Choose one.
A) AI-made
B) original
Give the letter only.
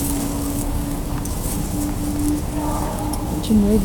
A